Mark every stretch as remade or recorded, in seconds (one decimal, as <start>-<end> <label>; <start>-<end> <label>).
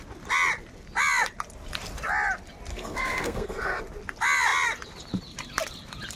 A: 0.0-2.7 recorded; 2.7-3.8 remade; 3.8-6.2 recorded